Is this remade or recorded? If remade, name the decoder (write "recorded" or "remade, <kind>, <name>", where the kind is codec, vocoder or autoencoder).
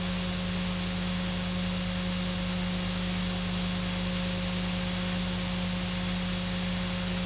recorded